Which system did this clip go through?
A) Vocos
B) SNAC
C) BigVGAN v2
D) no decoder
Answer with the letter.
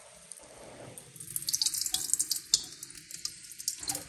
D